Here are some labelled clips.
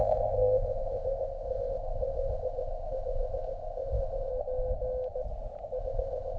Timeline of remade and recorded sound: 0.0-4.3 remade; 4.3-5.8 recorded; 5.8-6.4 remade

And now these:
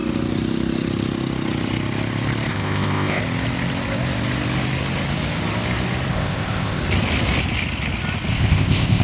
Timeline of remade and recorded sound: 0.0-2.5 recorded; 2.5-3.2 remade; 3.2-6.1 recorded; 6.1-6.8 remade; 6.8-8.3 recorded; 8.3-9.0 remade

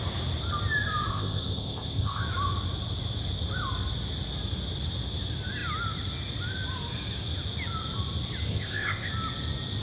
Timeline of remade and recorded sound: 0.0-1.1 recorded; 1.1-2.2 remade; 2.2-8.5 recorded; 8.5-9.1 remade; 9.1-9.8 recorded

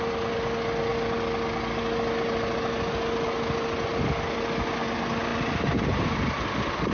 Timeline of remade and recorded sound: 0.0-6.9 recorded

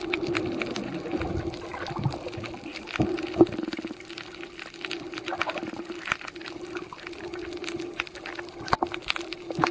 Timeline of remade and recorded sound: 0.0-9.7 recorded

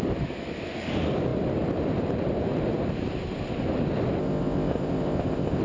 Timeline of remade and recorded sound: 0.0-4.2 recorded; 4.2-5.6 remade

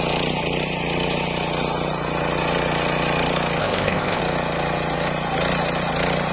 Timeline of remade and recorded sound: 0.0-3.6 recorded; 3.6-4.2 remade; 4.2-6.3 recorded

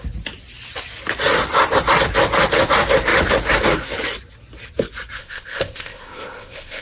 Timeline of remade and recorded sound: 0.0-5.2 recorded; 5.2-6.8 remade